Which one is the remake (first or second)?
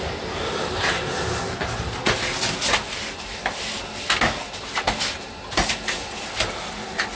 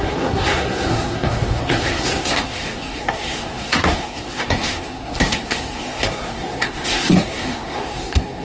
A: second